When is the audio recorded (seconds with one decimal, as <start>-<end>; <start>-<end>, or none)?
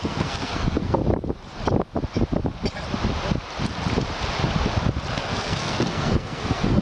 1.0-5.1